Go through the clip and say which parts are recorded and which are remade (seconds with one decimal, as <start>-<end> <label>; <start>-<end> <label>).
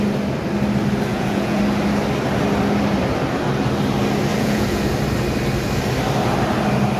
0.0-1.1 recorded; 1.1-1.6 remade; 1.6-4.3 recorded; 4.3-4.9 remade; 4.9-7.0 recorded